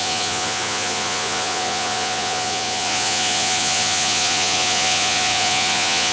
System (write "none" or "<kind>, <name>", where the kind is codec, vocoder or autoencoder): vocoder, Vocos